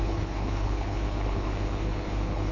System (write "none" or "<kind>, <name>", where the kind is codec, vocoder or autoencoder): codec, HILCodec